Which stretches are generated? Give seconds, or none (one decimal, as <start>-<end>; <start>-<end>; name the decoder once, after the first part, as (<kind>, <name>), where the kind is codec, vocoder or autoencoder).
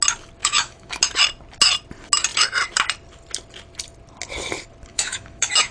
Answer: 0.4-1.0 (autoencoder, DAC-VAE); 4.9-5.7